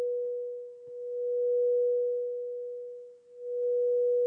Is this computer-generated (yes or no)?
no